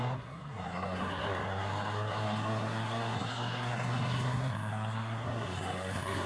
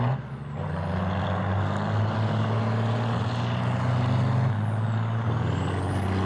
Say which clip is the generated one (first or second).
first